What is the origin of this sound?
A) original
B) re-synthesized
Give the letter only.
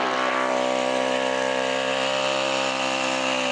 A